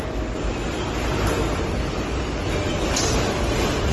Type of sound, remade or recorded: recorded